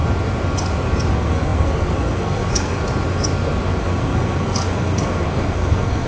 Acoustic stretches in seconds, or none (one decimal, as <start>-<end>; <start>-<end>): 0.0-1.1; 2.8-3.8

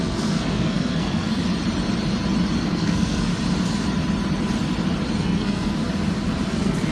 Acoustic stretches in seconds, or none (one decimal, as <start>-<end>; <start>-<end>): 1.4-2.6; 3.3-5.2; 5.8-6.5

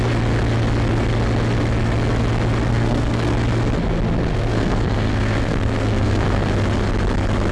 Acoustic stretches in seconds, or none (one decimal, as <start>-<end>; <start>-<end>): 0.0-2.7; 3.3-4.3; 6.5-7.5

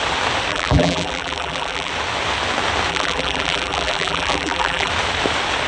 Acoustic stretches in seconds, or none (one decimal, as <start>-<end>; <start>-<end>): 0.0-0.5; 1.9-2.9; 4.9-5.7